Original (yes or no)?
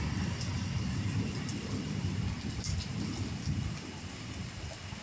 yes